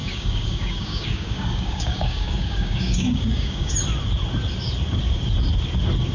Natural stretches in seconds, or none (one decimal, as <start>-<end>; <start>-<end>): 3.7-6.1